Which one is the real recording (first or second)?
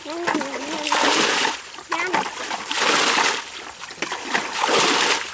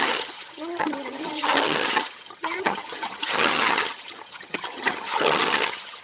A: first